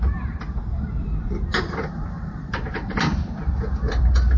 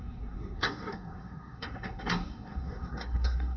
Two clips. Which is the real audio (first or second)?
first